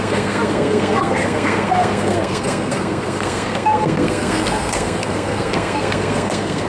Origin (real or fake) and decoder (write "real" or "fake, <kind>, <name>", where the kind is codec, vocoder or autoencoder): fake, codec, SNAC